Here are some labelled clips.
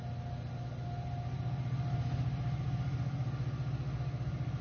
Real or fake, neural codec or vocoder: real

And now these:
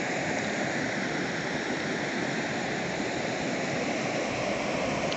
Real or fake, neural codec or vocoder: real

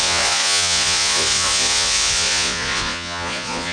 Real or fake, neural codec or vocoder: fake, vocoder, Vocos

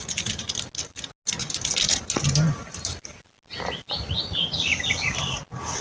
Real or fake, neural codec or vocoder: real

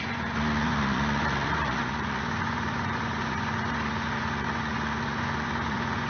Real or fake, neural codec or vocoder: fake, vocoder, Vocos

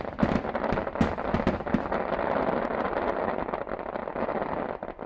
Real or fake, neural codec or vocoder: real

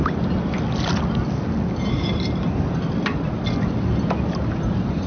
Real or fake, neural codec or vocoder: real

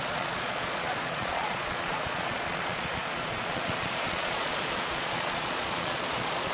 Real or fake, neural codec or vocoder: fake, vocoder, Vocos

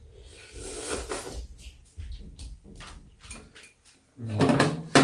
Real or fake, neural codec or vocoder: real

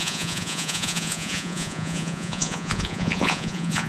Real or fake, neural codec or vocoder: fake, vocoder, Vocos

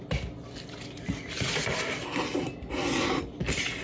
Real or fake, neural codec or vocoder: real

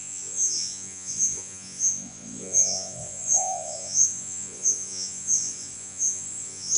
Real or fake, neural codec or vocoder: fake, vocoder, Vocos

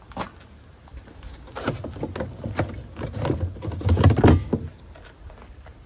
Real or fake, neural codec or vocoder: real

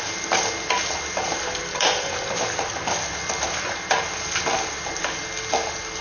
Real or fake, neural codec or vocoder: real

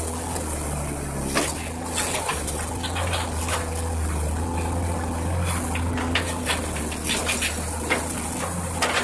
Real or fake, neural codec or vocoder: real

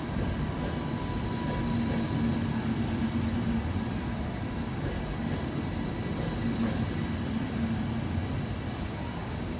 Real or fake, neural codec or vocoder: real